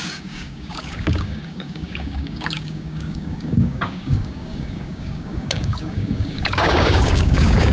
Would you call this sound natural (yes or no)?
no